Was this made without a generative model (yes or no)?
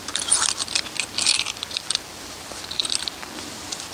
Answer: no